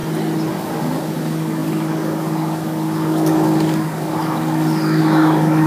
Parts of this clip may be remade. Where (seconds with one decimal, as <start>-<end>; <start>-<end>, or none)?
0.5-5.7